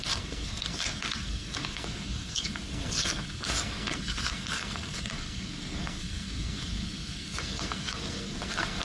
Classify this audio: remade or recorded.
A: remade